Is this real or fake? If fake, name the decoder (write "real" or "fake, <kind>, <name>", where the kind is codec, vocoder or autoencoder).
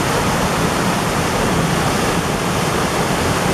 real